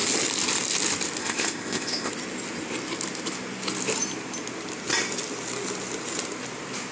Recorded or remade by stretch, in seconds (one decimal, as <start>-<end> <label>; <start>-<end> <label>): 0.0-1.2 recorded; 1.2-2.1 remade; 2.1-6.9 recorded